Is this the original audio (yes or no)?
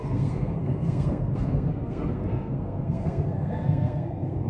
no